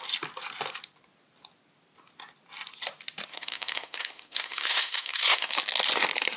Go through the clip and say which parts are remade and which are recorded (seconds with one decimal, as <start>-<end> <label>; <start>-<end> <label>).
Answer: 0.0-3.3 recorded; 3.3-5.5 remade; 5.5-6.4 recorded